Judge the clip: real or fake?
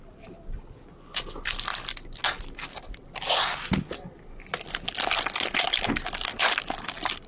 real